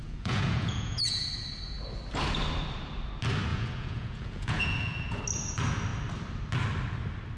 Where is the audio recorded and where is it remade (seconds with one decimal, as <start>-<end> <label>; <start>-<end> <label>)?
0.0-1.2 remade; 1.2-3.5 recorded; 3.5-5.2 remade; 5.2-7.4 recorded